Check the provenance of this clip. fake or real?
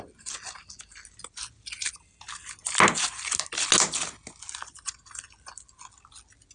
real